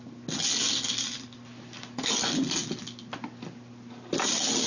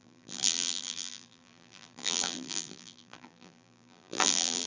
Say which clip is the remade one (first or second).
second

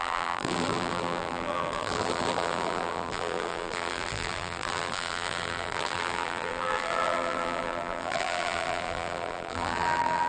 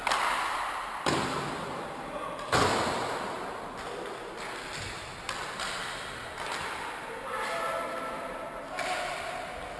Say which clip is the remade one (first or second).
first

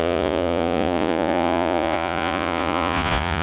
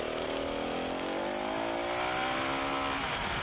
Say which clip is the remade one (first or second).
first